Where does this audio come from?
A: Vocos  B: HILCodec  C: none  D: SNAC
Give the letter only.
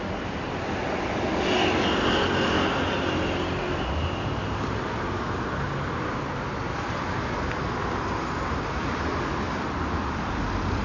C